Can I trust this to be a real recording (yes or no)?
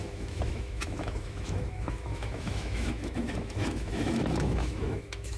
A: no